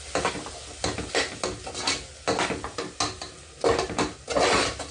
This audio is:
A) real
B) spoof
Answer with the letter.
A